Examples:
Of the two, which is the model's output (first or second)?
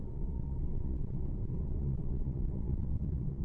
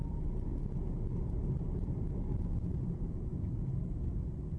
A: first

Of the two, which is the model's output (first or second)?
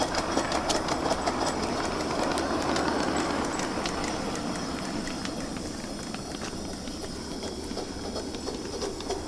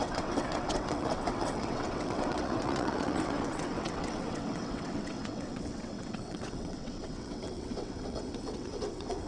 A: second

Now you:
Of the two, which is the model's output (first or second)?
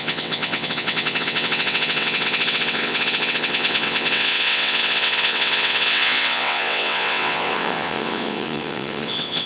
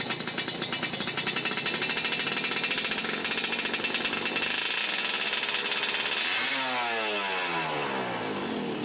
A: first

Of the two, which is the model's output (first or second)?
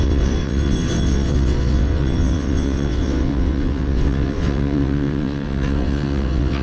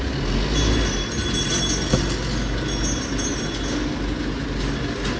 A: first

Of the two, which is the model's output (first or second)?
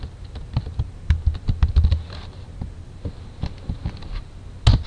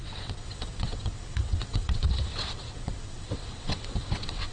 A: second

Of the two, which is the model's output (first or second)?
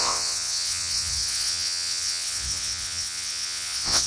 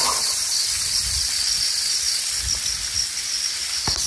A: first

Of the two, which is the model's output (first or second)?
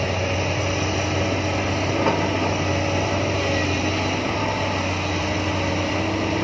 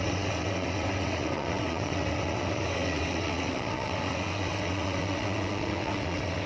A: second